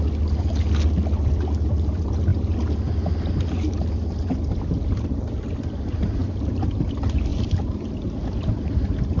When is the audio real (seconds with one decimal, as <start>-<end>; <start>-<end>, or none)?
0.0-6.2; 6.8-7.3; 7.9-9.2